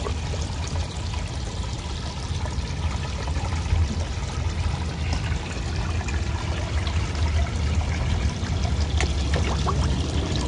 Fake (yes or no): no